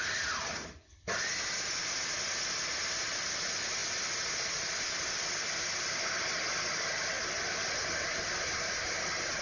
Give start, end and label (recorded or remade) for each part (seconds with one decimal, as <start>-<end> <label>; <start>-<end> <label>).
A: 0.0-9.4 recorded

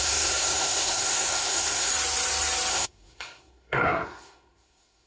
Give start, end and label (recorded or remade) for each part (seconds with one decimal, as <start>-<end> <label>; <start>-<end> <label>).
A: 0.0-1.9 remade; 1.9-2.7 recorded; 2.7-5.1 remade